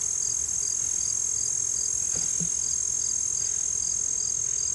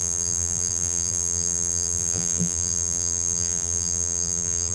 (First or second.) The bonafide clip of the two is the first